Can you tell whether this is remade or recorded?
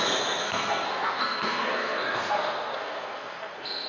remade